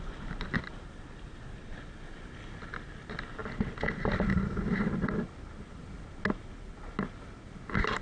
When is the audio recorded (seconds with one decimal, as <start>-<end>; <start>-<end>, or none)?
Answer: 0.0-8.0